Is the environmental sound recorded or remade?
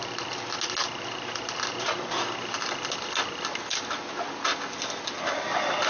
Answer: recorded